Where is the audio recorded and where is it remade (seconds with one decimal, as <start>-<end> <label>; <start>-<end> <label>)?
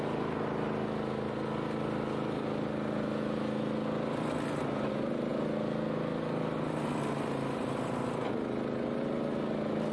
0.0-9.9 recorded